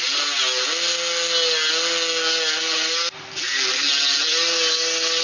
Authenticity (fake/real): real